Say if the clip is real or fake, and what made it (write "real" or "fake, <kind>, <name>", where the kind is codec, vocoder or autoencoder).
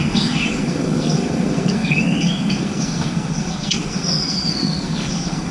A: fake, codec, SNAC